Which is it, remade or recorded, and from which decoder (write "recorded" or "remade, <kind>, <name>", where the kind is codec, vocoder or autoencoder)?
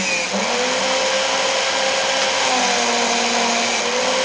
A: recorded